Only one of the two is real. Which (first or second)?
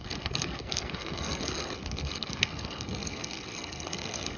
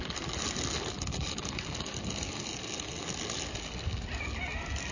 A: second